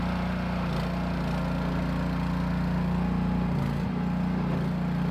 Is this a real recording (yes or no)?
yes